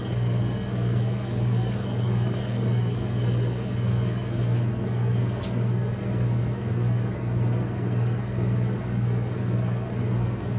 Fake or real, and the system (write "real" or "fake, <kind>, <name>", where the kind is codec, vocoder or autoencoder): fake, codec, SNAC